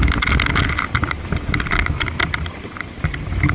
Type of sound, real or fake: real